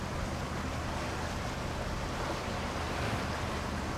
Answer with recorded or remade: recorded